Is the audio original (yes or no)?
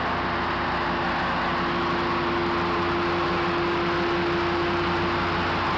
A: yes